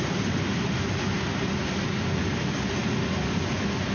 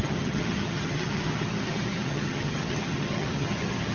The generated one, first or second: second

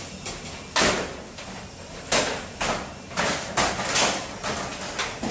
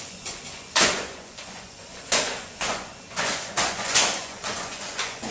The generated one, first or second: second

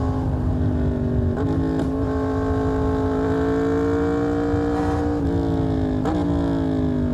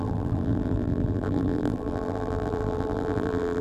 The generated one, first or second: second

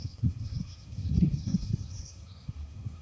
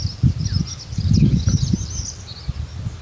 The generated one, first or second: first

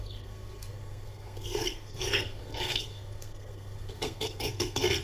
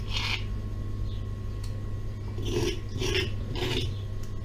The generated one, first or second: first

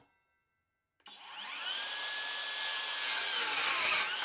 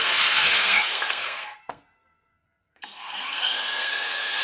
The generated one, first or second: second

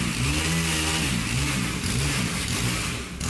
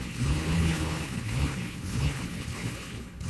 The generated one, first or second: second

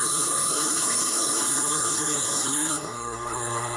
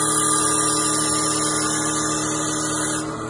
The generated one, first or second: first